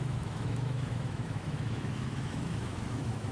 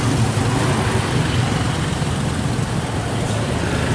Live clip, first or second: second